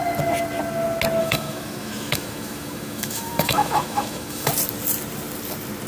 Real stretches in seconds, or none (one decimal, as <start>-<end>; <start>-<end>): 0.0-1.2; 4.5-5.9

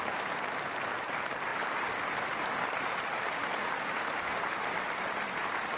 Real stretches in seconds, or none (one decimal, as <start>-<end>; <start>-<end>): 0.0-5.8

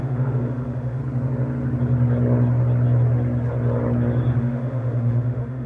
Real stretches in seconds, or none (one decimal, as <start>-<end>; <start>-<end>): 1.0-4.4

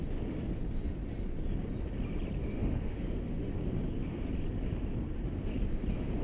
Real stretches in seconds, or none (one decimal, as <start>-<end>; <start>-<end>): 0.0-2.4; 3.5-6.2